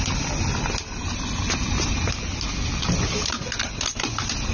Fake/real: real